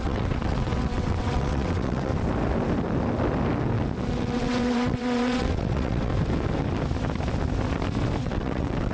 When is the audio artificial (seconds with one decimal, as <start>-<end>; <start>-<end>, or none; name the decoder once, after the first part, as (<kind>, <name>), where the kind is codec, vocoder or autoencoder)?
0.0-2.1 (vocoder, WaveNeXt); 4.2-6.1; 8.2-8.9